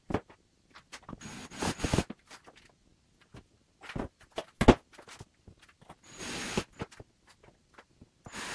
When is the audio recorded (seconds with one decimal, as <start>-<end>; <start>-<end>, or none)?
0.0-8.5